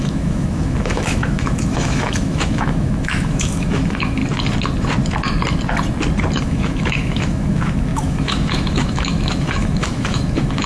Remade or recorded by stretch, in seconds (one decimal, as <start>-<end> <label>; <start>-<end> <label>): 0.0-4.2 remade; 4.2-6.4 recorded; 6.4-10.7 remade

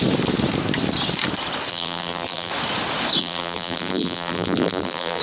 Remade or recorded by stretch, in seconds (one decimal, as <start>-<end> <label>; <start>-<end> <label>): 0.0-1.7 recorded; 1.7-2.5 remade; 2.5-3.2 recorded; 3.2-5.2 remade

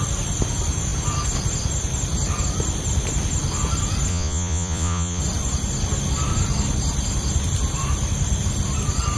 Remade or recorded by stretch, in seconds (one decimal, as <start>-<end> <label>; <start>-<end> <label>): 0.0-4.1 recorded; 4.1-5.2 remade; 5.2-9.2 recorded

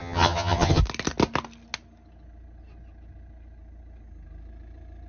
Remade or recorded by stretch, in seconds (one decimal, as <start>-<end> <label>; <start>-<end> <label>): 0.0-0.8 remade; 0.8-5.1 recorded

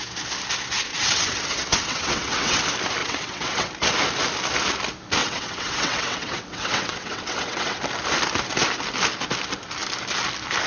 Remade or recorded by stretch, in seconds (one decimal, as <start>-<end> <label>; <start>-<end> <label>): 0.0-0.9 recorded; 0.9-2.6 remade; 2.6-3.0 recorded; 3.0-3.7 remade; 3.7-5.2 recorded; 5.2-7.8 remade; 7.8-10.7 recorded

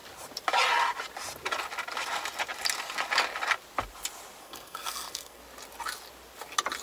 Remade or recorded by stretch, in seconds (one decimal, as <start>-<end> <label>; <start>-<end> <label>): 0.0-4.4 recorded; 4.4-5.4 remade; 5.4-6.8 recorded

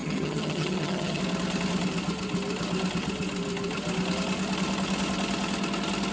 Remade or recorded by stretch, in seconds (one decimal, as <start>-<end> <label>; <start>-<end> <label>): 0.0-1.2 remade; 1.2-6.1 recorded

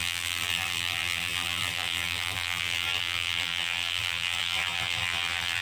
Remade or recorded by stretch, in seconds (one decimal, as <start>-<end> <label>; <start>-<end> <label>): 0.0-5.6 remade